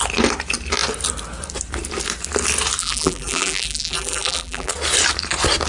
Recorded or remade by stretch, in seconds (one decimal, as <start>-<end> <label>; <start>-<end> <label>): 0.0-2.8 recorded; 2.8-4.7 remade; 4.7-5.7 recorded